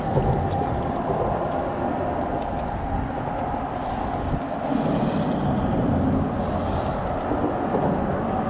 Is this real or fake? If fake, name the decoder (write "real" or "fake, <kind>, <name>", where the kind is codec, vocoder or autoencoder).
real